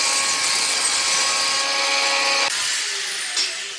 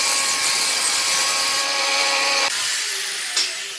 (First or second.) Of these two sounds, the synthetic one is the second